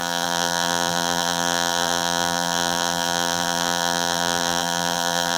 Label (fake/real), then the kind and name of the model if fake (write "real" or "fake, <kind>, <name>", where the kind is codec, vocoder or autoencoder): fake, vocoder, BigVGAN v2